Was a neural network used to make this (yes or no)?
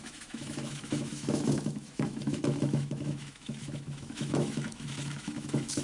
yes